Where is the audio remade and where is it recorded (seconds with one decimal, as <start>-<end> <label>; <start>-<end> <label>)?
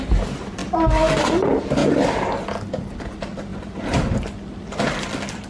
0.0-5.5 recorded